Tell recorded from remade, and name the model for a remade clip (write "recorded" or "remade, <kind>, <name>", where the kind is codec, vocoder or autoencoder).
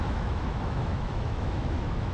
remade, autoencoder, DAC-VAE